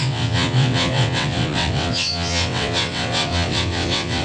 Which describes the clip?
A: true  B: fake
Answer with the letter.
B